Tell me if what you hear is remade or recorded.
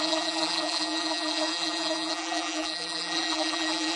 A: remade